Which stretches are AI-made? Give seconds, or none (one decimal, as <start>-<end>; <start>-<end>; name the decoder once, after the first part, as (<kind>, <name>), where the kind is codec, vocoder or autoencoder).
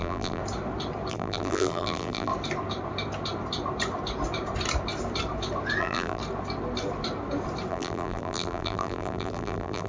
0.0-0.4 (vocoder, BigVGAN v2); 1.1-2.3; 5.8-6.2; 7.7-9.9